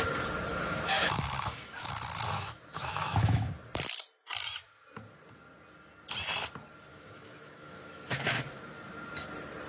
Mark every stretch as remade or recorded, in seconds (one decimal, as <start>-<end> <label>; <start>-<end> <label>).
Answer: 0.0-0.5 recorded; 0.5-3.5 remade; 3.5-6.9 recorded; 6.9-8.4 remade; 8.4-9.7 recorded